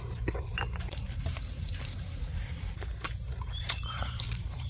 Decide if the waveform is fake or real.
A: fake